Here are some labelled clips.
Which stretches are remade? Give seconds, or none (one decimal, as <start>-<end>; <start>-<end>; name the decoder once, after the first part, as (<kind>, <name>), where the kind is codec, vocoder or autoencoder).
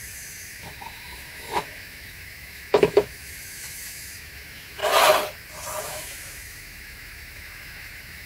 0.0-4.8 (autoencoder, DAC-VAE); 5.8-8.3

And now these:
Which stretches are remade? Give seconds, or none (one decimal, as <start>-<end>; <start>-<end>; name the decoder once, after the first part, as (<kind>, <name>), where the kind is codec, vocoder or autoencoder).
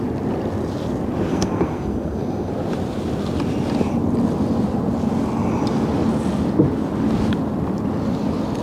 1.3-2.5 (codec, SNAC)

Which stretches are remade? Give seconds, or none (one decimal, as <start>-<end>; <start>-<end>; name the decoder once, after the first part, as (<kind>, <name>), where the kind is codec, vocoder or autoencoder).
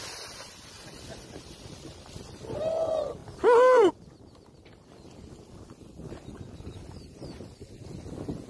3.2-3.9 (vocoder, BigVGAN v2)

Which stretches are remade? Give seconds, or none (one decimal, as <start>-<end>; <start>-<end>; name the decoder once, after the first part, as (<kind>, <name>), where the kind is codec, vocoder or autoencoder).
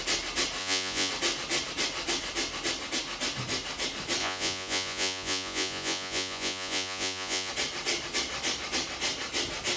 0.6-1.1 (vocoder, Vocos); 4.2-7.5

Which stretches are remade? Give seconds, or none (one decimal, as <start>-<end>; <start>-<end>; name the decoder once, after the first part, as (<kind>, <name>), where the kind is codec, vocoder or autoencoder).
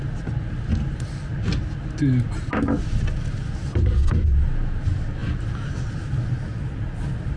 none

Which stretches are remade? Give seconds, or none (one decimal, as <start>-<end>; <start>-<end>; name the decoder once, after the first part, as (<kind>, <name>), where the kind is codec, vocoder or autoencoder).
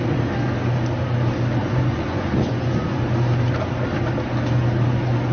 1.6-3.0 (vocoder, Vocos)